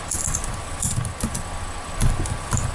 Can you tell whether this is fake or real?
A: real